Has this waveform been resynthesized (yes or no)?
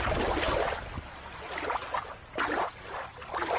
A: no